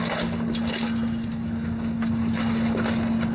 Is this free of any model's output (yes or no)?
yes